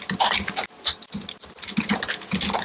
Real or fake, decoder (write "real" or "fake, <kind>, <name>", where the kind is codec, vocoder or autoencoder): real